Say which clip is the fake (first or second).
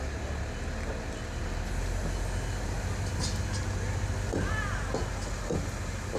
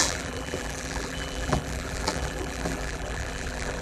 second